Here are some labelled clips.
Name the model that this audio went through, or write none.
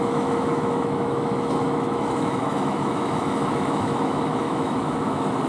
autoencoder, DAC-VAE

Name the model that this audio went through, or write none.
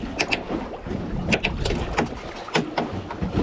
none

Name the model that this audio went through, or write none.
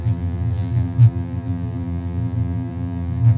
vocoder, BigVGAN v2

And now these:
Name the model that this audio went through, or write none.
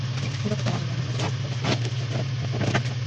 none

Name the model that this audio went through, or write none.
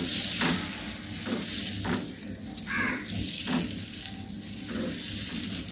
none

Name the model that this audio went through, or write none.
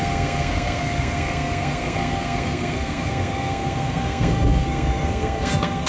codec, SNAC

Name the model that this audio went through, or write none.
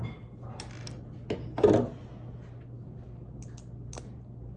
none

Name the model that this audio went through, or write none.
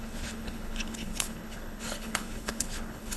codec, HILCodec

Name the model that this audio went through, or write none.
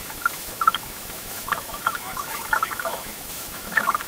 autoencoder, DAC-VAE